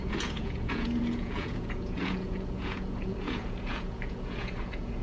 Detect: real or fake fake